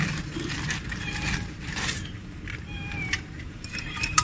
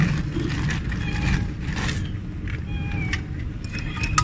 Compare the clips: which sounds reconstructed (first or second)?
first